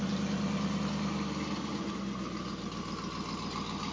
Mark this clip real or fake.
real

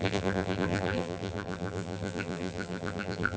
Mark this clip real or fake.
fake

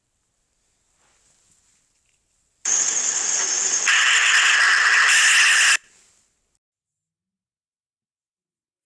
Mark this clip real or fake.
real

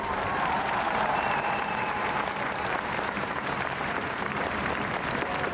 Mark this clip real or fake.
fake